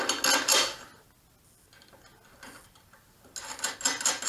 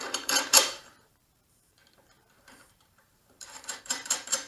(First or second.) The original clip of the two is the first